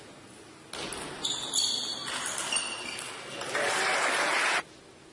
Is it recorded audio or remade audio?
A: recorded